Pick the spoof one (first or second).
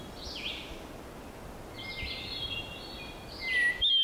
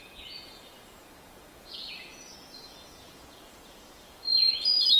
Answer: second